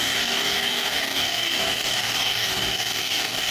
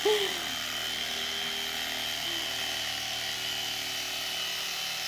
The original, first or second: second